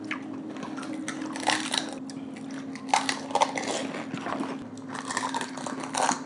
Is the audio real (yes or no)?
yes